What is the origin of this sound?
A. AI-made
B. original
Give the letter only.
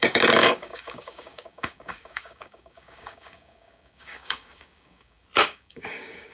A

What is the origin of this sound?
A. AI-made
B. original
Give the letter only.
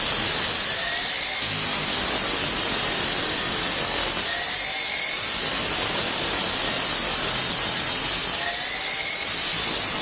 B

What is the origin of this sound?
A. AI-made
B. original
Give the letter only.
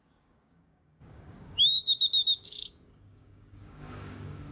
A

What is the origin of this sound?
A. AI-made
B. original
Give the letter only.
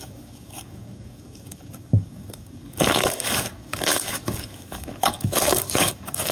A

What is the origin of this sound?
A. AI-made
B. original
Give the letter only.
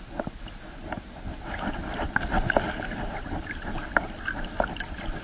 B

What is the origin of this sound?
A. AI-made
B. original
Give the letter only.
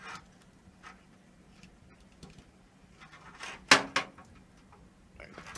B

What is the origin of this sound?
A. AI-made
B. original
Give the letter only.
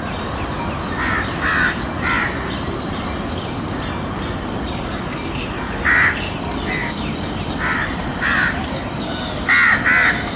B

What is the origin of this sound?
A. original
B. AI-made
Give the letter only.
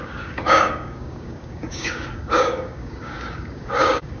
B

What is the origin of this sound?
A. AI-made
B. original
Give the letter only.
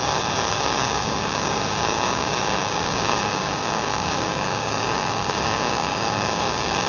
A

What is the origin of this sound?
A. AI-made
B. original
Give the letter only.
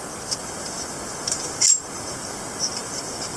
B